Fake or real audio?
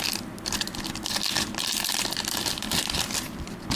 real